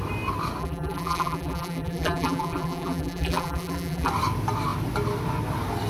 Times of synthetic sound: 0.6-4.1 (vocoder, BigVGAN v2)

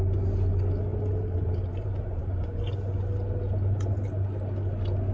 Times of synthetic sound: 0.9-2.6 (vocoder, BigVGAN v2)